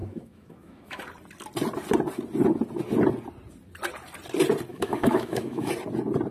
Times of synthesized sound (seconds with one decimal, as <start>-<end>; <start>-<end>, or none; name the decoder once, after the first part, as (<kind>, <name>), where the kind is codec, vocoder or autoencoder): 0.0-1.0 (autoencoder, DAC-VAE); 4.7-5.7